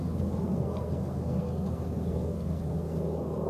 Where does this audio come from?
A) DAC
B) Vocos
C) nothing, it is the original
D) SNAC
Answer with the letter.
D